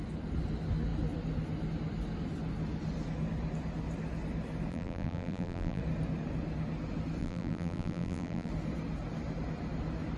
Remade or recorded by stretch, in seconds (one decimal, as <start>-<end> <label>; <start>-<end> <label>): 0.0-4.7 recorded; 4.7-5.8 remade; 5.8-7.2 recorded; 7.2-8.5 remade; 8.5-10.2 recorded